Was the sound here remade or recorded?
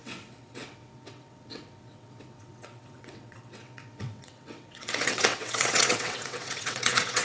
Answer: remade